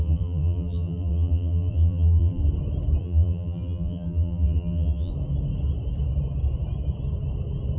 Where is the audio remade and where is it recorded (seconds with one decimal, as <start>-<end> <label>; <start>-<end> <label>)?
0.0-2.4 remade; 2.4-3.0 recorded; 3.0-5.1 remade; 5.1-7.8 recorded